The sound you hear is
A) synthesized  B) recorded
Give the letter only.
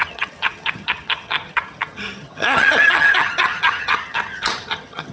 A